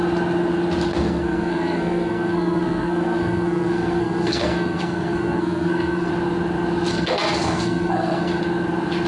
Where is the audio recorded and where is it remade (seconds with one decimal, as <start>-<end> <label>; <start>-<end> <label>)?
0.0-0.9 recorded; 0.9-6.1 remade; 6.1-6.9 recorded; 6.9-8.4 remade; 8.4-9.1 recorded